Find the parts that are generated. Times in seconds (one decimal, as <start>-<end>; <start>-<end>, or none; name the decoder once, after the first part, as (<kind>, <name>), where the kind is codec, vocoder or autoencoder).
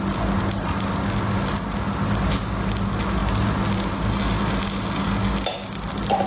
none